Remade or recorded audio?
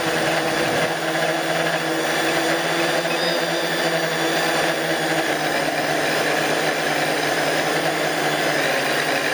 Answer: recorded